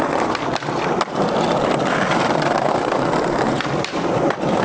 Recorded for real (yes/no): no